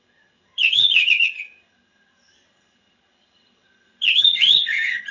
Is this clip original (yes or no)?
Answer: no